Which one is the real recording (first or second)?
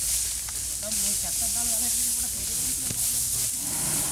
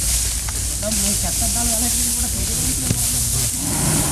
first